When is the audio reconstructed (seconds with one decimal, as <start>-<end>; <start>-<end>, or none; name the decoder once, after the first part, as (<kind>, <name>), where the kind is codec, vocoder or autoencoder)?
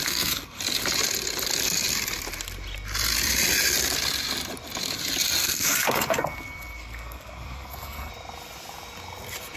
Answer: 0.0-0.6 (codec, SNAC); 5.4-8.1